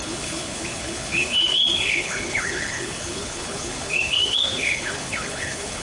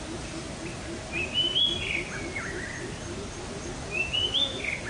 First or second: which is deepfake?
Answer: first